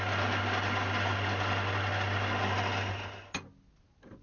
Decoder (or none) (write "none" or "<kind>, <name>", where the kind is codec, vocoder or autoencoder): none